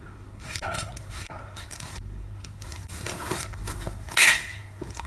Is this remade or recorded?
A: remade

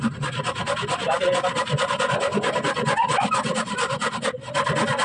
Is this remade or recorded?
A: recorded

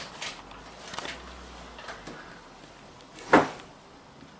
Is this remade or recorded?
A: recorded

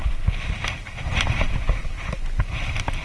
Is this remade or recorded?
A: recorded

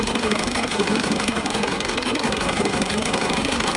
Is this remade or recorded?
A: remade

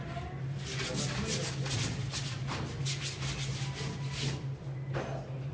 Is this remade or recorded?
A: recorded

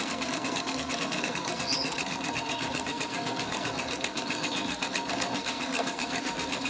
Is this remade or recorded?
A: remade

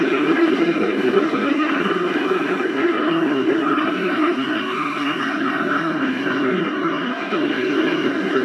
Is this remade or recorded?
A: remade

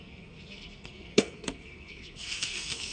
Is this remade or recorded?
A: remade